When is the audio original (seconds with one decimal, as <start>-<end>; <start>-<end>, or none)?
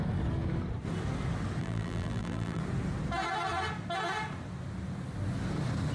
0.0-1.6; 2.6-5.9